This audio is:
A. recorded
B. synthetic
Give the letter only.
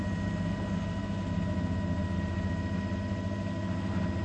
A